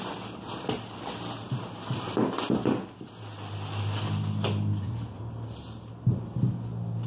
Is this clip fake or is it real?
real